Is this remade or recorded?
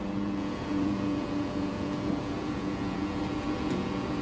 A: remade